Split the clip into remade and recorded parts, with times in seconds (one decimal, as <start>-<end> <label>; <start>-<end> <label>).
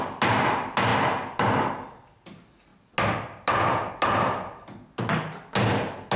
0.0-6.2 recorded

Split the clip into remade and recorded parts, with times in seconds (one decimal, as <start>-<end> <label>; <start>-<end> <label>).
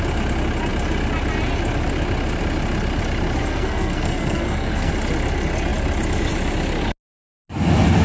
0.0-3.4 recorded; 3.4-4.9 remade; 4.9-8.0 recorded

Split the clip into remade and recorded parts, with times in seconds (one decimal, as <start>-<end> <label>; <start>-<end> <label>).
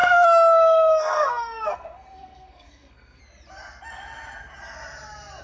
0.0-3.2 remade; 3.2-5.4 recorded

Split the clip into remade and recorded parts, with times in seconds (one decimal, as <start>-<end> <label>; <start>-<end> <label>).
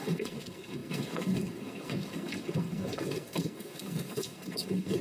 0.0-5.0 remade